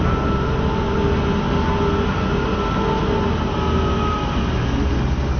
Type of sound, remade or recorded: recorded